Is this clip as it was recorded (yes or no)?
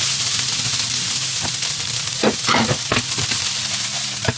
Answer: no